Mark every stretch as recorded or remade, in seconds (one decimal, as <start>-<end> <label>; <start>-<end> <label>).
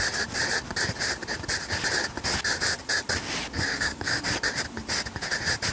0.0-3.7 recorded; 3.7-4.2 remade; 4.2-5.7 recorded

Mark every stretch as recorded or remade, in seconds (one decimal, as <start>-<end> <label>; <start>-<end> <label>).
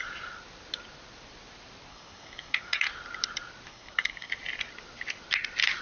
0.0-1.9 recorded; 1.9-2.9 remade; 2.9-3.7 recorded; 3.7-4.3 remade; 4.3-5.8 recorded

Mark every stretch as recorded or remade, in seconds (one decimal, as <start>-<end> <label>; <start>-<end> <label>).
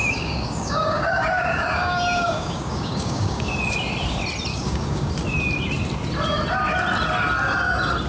0.0-3.5 remade; 3.5-4.5 recorded; 4.5-5.1 remade; 5.1-8.1 recorded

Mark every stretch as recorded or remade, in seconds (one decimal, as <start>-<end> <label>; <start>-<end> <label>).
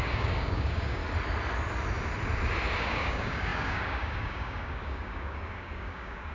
0.0-1.0 remade; 1.0-2.8 recorded; 2.8-6.3 remade